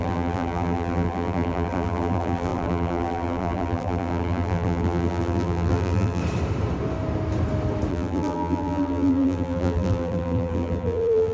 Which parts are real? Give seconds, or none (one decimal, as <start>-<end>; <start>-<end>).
6.2-7.9